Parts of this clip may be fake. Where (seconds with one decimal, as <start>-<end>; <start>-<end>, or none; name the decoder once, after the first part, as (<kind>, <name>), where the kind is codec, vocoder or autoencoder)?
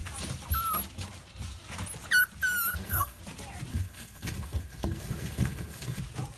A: 2.7-3.2 (codec, SNAC); 3.7-6.0